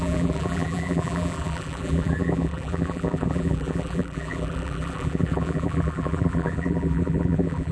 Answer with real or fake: fake